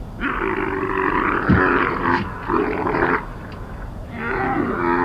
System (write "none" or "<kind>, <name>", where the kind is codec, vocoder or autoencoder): none